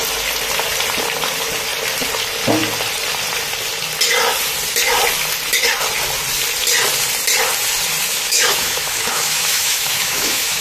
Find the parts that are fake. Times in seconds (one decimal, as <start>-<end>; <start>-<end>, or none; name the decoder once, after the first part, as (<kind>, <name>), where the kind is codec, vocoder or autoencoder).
8.1-10.6 (autoencoder, DAC-VAE)